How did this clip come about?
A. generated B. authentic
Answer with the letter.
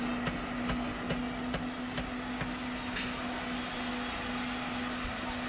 B